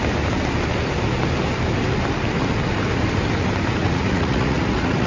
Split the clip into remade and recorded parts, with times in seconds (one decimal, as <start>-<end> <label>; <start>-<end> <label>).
0.0-3.8 recorded; 3.8-5.1 remade